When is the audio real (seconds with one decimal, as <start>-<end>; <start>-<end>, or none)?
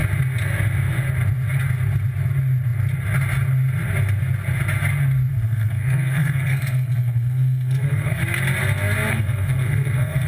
0.0-5.3; 8.2-9.1